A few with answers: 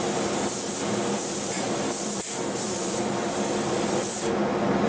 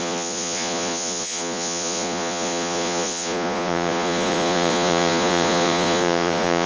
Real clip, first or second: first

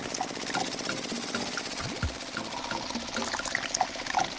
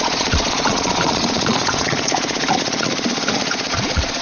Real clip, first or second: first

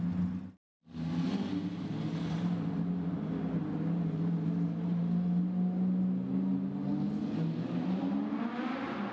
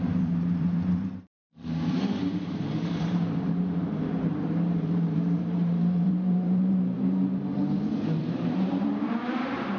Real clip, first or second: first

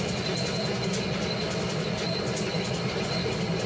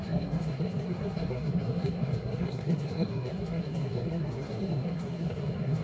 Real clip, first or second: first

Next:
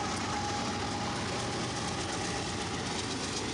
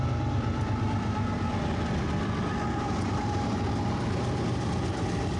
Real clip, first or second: first